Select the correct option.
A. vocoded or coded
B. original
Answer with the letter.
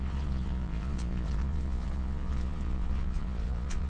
A